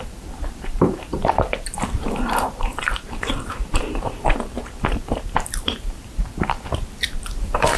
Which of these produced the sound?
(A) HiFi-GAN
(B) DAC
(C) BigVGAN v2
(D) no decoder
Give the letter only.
C